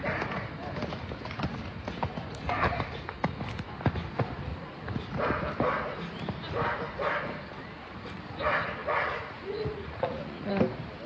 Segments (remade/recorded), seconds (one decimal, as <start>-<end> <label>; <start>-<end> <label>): 0.0-4.5 recorded; 4.5-5.0 remade; 5.0-7.6 recorded; 7.6-8.1 remade; 8.1-8.8 recorded; 8.8-10.5 remade; 10.5-11.1 recorded